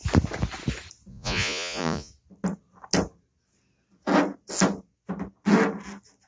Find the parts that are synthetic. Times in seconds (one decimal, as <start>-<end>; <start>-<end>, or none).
1.1-2.1